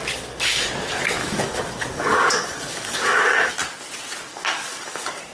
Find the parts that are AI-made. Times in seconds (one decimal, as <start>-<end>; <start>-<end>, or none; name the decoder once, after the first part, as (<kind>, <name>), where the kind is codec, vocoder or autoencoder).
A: 0.0-0.7 (codec, DAC); 1.2-3.5; 4.3-5.3